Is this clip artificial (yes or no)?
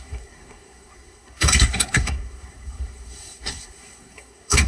yes